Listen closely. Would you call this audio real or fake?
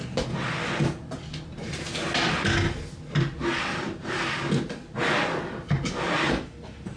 real